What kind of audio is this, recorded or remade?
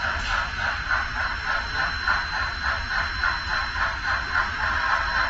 recorded